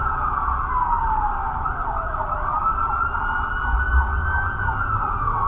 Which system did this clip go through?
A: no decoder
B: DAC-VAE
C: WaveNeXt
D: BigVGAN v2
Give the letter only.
A